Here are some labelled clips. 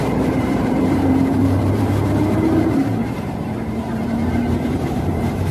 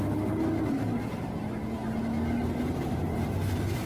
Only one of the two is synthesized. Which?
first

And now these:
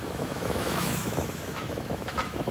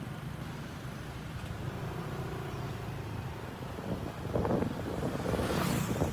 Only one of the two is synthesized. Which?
first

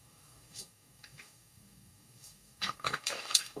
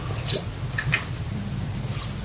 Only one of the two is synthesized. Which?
first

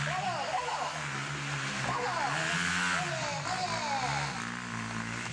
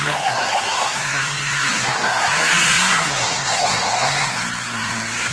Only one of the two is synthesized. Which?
second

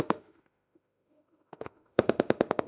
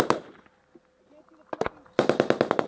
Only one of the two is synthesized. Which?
first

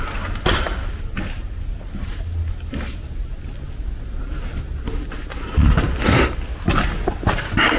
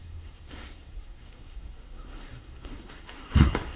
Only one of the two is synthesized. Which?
second